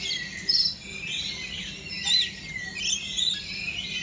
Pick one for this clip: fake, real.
real